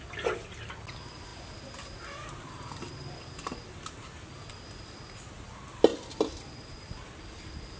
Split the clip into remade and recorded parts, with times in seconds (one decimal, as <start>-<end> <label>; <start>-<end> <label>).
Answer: 0.0-7.8 recorded